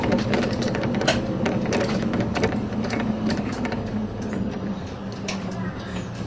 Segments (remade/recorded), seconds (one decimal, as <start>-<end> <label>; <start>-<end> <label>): 0.0-6.3 remade